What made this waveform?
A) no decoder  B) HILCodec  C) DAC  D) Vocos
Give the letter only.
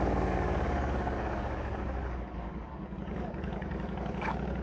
C